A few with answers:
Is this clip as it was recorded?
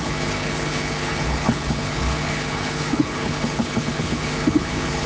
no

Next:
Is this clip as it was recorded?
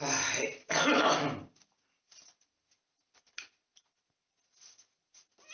yes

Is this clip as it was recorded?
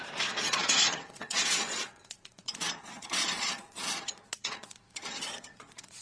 no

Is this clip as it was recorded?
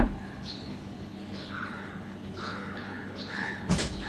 no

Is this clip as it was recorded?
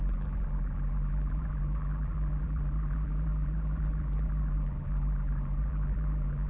no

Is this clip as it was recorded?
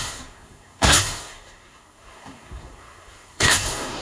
no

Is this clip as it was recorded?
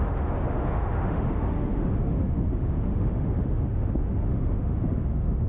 no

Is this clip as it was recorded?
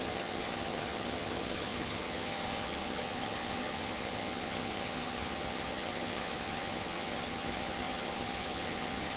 no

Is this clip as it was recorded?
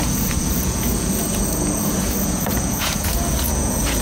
no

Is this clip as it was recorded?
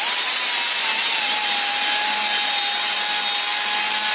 yes